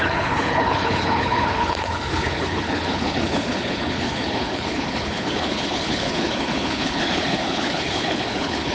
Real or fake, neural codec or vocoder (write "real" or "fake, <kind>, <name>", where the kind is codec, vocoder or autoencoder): fake, codec, HILCodec